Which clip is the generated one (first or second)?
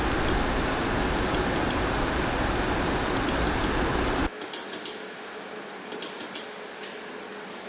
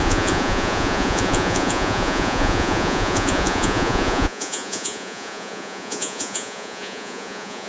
second